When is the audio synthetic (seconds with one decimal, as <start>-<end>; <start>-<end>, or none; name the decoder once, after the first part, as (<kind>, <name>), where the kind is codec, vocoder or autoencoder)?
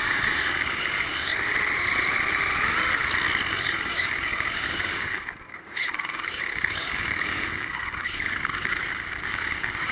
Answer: 0.0-1.3 (codec, DAC); 3.5-9.9